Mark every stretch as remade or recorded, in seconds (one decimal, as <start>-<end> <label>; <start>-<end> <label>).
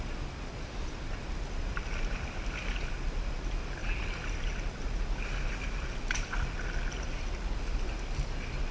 0.0-8.7 recorded